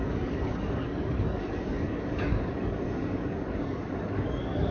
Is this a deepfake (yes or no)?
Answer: yes